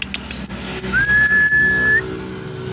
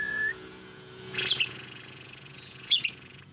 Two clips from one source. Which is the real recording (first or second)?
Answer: first